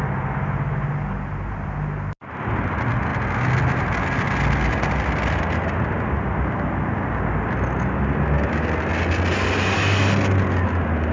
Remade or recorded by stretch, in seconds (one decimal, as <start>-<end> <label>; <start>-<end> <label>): 0.0-11.1 recorded